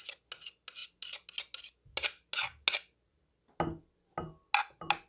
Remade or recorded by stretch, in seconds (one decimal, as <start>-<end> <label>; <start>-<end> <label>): 0.0-5.1 recorded